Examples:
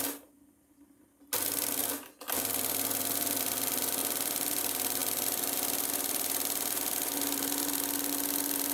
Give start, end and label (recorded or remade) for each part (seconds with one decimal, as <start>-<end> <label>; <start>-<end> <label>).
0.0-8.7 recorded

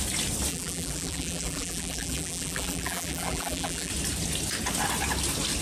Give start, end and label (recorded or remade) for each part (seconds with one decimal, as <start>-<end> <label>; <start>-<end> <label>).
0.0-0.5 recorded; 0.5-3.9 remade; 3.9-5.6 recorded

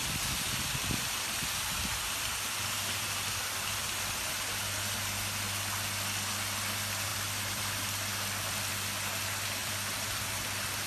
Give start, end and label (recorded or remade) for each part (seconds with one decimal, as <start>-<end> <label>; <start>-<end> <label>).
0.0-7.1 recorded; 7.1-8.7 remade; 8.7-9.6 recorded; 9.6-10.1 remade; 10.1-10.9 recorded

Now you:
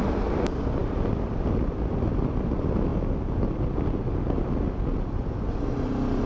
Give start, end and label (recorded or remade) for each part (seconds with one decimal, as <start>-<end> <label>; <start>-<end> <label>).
0.0-6.3 recorded

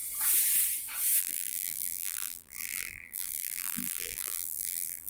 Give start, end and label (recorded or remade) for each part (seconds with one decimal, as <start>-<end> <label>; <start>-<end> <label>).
0.0-1.2 recorded; 1.2-5.1 remade